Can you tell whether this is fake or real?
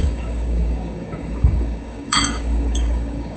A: fake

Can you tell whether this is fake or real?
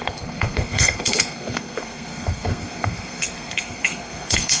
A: fake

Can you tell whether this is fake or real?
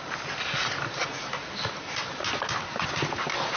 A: real